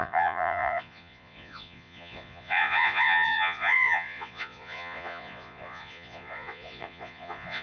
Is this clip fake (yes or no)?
yes